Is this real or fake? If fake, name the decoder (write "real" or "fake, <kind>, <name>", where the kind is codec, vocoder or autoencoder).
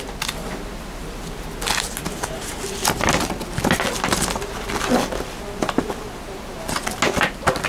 real